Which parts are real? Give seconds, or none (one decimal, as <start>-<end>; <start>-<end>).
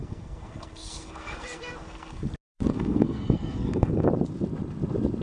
2.3-2.7; 4.1-5.2